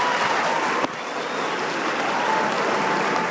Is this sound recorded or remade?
recorded